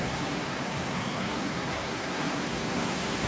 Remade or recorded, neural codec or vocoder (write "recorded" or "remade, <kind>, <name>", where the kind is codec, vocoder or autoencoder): remade, codec, SNAC